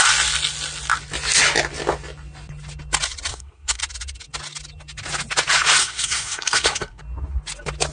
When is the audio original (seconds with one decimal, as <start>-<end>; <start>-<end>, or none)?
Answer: 0.0-3.3; 3.8-5.8; 7.0-7.9